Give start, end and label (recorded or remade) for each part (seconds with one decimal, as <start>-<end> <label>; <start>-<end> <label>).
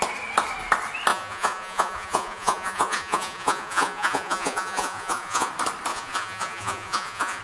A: 0.0-1.1 recorded; 1.1-5.5 remade; 5.5-5.9 recorded; 5.9-7.4 remade